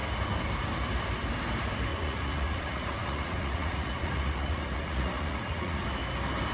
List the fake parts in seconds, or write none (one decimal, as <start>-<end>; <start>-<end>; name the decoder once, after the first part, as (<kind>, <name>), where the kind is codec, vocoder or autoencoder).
1.9-5.8 (vocoder, Vocos)